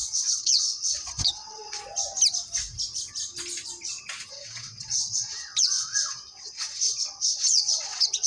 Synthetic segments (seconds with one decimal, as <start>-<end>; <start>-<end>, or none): 0.0-1.8; 4.3-8.3